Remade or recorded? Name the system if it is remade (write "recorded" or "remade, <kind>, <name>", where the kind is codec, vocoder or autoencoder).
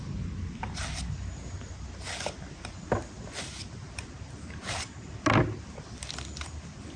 recorded